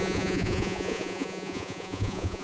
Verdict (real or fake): fake